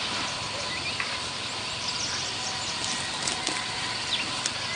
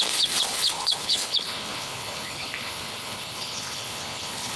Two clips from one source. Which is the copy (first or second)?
second